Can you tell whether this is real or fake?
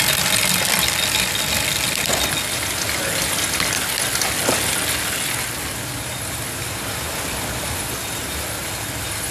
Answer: real